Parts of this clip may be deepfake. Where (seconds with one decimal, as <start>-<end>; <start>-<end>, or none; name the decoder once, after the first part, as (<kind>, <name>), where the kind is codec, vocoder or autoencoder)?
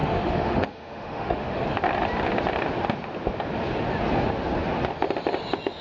0.0-1.6 (autoencoder, DAC-VAE)